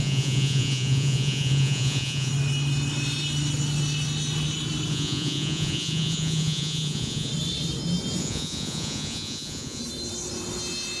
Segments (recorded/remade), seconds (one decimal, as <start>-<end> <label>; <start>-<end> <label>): 0.0-2.3 remade; 2.3-4.9 recorded; 4.9-7.3 remade; 7.3-8.2 recorded; 8.2-9.8 remade; 9.8-11.0 recorded